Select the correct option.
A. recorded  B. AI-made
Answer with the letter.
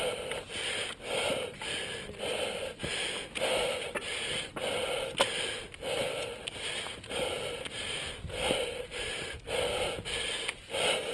A